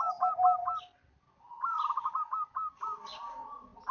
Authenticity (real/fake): real